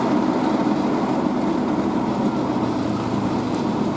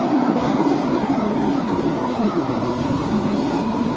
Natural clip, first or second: first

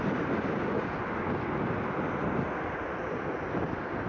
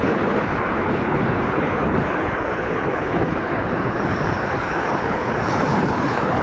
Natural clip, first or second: first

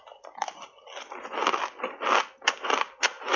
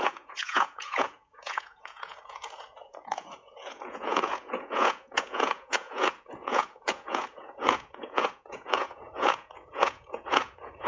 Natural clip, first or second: first